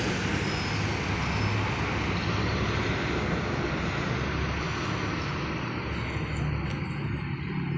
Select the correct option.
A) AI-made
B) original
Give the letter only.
B